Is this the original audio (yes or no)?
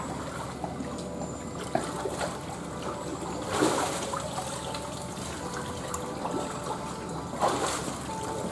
yes